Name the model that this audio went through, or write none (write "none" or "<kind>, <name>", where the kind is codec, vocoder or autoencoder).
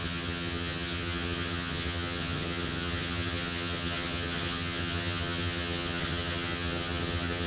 vocoder, HiFi-GAN